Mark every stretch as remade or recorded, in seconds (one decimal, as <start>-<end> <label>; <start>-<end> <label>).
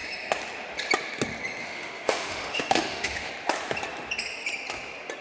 0.0-1.6 recorded; 1.6-3.3 remade; 3.3-5.2 recorded